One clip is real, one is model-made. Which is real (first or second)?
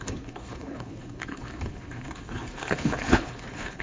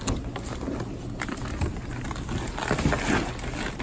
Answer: second